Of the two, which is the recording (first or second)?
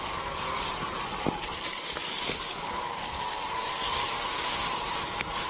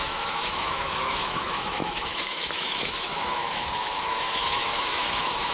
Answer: first